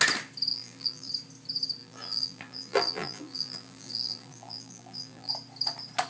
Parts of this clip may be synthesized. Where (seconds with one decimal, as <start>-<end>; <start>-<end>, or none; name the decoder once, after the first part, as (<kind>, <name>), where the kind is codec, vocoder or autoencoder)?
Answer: 0.5-1.1 (vocoder, BigVGAN v2); 1.8-5.3